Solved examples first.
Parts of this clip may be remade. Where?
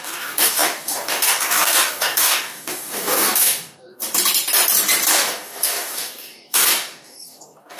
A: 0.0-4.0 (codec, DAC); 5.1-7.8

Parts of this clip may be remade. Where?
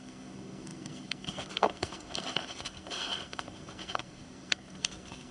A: 0.0-5.3 (codec, SNAC)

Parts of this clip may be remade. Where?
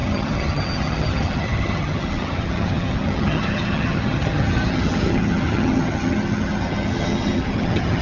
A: 0.0-8.0 (vocoder, HiFi-GAN)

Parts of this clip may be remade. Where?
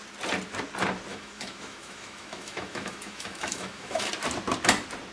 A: 1.1-4.1 (autoencoder, DAC-VAE)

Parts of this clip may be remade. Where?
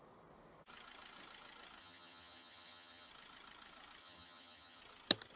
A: 1.8-3.1 (vocoder, HiFi-GAN); 4.0-4.8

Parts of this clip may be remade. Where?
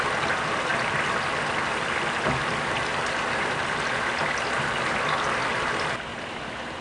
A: 0.7-4.1 (vocoder, BigVGAN v2); 6.1-6.8